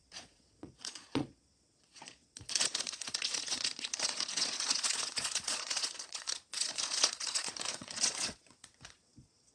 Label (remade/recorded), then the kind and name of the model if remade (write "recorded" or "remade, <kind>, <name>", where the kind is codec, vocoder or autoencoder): remade, vocoder, Vocos